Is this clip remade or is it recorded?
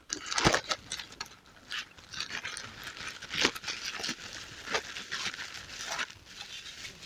recorded